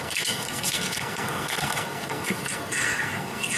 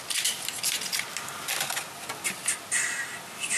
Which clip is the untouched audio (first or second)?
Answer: second